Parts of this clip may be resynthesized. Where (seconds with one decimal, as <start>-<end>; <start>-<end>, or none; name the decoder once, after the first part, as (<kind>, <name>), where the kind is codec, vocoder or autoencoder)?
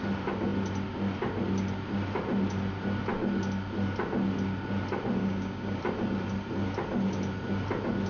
5.2-5.8 (codec, DAC)